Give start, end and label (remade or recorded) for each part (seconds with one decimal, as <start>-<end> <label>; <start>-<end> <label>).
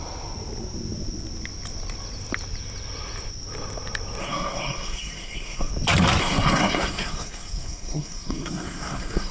0.0-4.2 recorded; 4.2-5.7 remade; 5.7-6.2 recorded; 6.2-9.3 remade